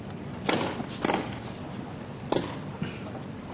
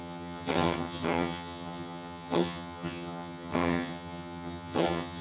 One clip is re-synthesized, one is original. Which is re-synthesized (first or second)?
second